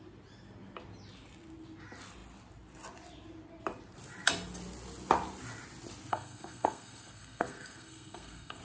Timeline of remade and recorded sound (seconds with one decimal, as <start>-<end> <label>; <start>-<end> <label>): 0.0-6.1 recorded; 6.1-8.6 remade